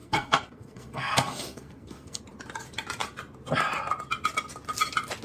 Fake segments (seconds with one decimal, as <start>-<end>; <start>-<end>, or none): 0.0-2.2